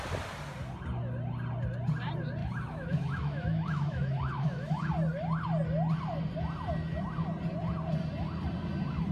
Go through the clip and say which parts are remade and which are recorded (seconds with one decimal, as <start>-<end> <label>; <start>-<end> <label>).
0.0-2.4 recorded; 2.4-4.9 remade; 4.9-9.1 recorded